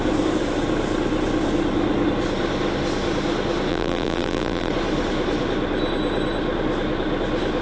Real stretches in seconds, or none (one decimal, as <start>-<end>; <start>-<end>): 0.0-3.7; 4.7-7.6